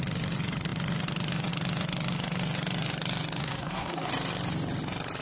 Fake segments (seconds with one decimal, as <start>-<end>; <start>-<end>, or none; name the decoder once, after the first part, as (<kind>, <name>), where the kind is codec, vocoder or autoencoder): 3.4-4.1 (codec, SNAC)